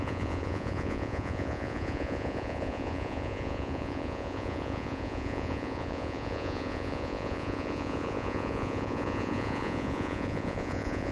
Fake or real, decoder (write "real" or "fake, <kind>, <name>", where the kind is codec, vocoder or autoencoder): fake, vocoder, Vocos